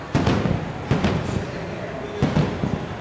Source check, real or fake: real